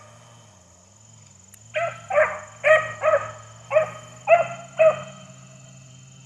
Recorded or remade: recorded